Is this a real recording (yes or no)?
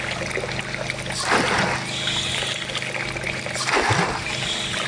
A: yes